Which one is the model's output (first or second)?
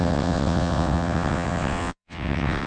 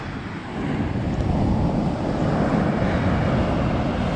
first